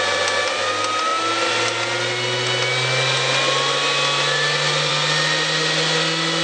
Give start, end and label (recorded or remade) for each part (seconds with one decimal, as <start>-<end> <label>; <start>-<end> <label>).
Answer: 0.0-6.4 recorded